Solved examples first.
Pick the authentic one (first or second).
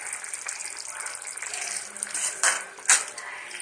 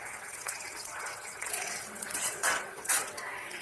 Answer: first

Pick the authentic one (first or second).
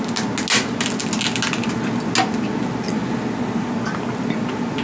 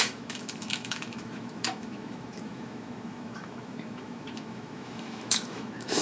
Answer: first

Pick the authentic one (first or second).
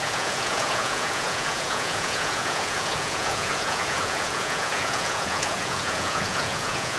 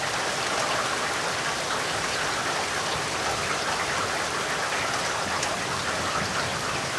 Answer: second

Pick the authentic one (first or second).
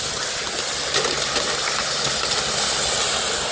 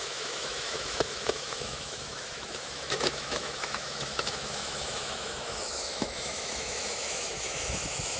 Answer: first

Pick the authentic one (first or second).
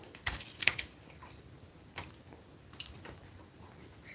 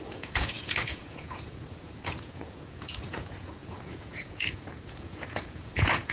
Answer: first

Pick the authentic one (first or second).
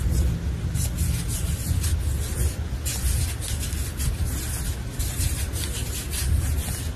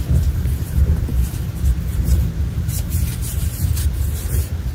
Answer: first